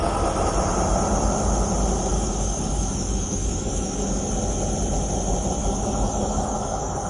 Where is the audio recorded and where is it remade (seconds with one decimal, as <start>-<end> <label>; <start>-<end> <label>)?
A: 0.0-2.1 recorded; 2.1-4.3 remade; 4.3-5.6 recorded; 5.6-7.1 remade